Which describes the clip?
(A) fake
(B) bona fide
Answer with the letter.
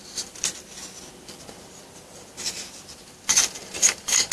B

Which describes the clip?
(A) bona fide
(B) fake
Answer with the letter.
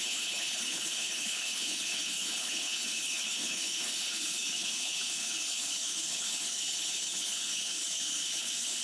B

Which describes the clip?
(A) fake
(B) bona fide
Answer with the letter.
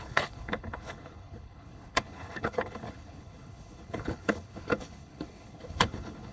A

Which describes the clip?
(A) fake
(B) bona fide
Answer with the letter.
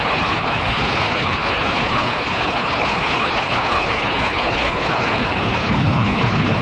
A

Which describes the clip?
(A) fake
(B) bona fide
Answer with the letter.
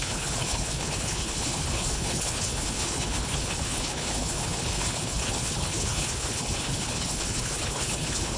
A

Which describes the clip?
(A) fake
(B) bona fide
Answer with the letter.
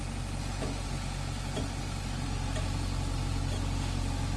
B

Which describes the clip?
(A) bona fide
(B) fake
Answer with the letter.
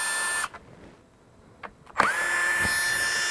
A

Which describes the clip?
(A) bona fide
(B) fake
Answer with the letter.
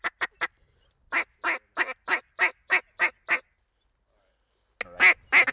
A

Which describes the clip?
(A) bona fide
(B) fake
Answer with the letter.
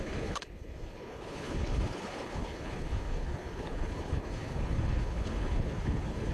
B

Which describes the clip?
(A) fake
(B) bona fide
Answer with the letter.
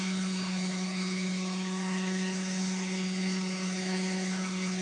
A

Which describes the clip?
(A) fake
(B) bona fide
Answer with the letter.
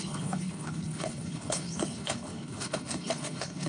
A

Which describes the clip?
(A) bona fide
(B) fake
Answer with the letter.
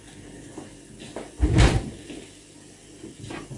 A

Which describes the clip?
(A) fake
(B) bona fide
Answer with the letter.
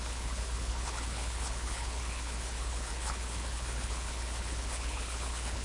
A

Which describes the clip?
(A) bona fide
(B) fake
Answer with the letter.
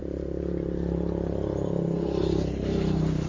A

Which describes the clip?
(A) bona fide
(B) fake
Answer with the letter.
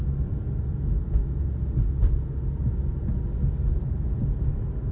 A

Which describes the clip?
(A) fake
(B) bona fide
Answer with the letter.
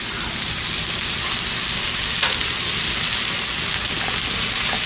B